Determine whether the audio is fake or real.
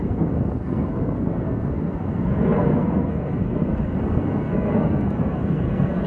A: fake